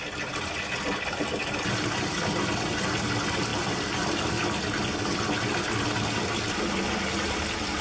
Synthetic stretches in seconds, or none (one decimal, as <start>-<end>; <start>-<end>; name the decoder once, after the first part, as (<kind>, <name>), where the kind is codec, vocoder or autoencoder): 3.5-4.2 (vocoder, BigVGAN v2)